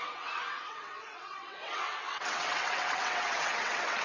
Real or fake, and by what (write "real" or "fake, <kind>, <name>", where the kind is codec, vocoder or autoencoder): fake, vocoder, WaveNeXt